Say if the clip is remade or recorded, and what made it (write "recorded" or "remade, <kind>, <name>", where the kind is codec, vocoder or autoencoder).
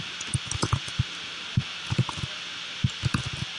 recorded